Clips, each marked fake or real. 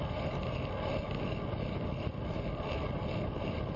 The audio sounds real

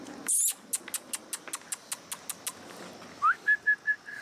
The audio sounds real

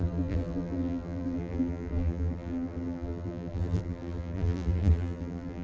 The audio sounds fake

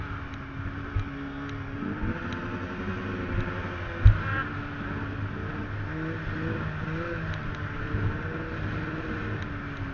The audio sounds real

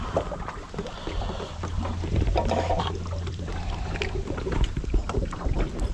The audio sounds fake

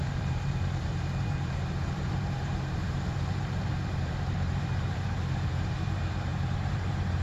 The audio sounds fake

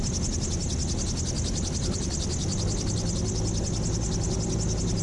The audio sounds real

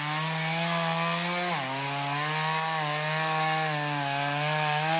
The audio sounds real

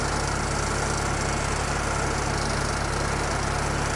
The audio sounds real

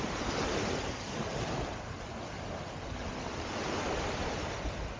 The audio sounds real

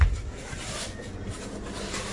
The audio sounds real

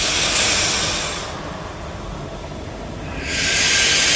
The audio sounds real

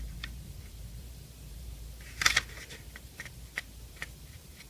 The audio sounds fake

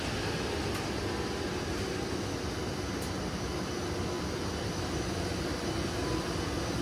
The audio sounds real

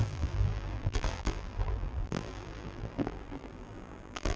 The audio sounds fake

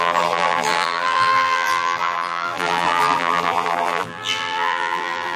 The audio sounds fake